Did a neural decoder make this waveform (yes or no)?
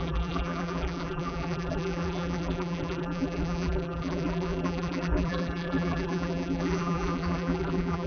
yes